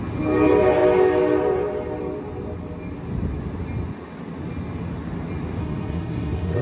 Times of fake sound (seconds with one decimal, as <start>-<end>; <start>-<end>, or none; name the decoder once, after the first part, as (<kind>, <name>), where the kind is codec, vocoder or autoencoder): 5.6-6.6 (codec, SNAC)